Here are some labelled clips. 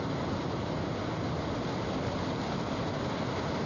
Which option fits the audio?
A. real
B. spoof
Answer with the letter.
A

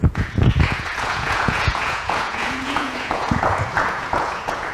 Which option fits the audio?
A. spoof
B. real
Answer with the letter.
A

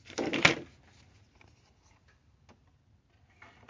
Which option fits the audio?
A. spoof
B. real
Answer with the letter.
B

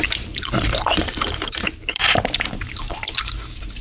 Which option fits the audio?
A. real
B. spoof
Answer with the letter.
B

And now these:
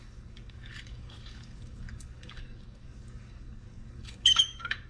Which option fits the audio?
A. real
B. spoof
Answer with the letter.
B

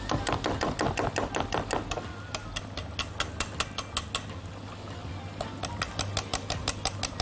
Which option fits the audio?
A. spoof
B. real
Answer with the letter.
B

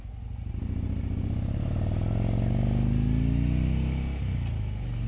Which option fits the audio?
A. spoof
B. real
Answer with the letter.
B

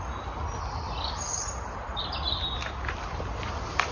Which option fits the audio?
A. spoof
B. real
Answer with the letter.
B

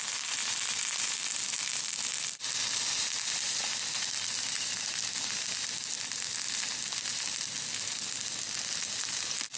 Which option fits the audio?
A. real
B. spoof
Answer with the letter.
A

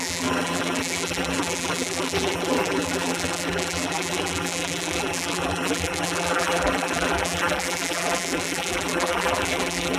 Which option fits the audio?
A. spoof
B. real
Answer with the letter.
A